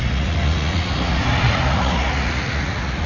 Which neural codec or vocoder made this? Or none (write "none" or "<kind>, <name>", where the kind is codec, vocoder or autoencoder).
vocoder, Vocos